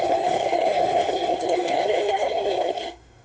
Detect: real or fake fake